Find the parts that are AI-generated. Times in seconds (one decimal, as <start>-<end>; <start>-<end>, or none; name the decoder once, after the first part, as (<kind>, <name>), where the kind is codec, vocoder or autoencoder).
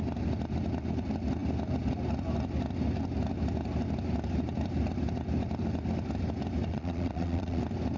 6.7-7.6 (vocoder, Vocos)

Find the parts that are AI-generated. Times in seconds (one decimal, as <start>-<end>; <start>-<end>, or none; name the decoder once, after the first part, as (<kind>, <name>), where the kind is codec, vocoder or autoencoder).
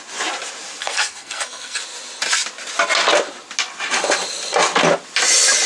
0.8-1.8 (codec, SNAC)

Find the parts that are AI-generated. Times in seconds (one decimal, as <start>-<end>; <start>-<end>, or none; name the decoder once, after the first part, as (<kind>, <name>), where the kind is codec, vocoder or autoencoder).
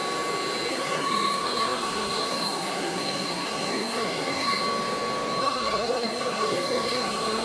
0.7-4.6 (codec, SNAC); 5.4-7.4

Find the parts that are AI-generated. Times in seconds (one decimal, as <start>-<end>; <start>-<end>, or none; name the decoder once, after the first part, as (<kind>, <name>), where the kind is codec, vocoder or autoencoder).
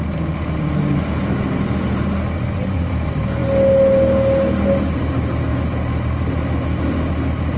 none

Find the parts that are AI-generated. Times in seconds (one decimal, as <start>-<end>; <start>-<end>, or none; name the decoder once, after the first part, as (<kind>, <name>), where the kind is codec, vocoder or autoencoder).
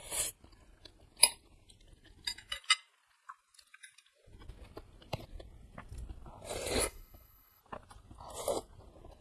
6.8-7.6 (codec, HILCodec)